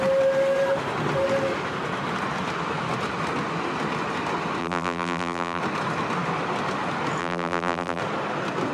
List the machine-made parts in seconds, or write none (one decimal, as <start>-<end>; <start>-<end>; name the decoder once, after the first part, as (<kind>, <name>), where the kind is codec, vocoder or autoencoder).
4.6-5.6 (vocoder, BigVGAN v2); 7.2-8.0